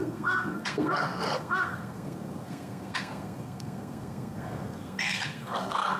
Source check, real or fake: fake